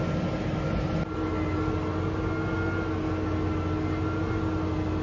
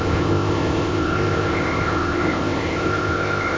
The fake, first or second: second